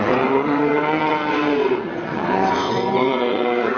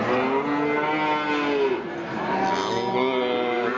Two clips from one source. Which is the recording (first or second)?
second